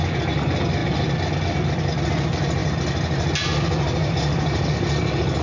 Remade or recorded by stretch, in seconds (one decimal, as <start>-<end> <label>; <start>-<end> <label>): 0.0-5.4 recorded